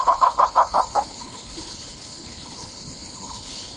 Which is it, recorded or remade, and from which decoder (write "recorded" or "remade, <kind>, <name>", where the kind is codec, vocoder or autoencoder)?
remade, codec, HILCodec